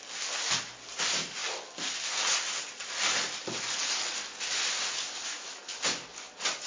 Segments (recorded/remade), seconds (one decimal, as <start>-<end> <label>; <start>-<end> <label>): 0.0-5.3 recorded; 5.3-5.8 remade; 5.8-6.7 recorded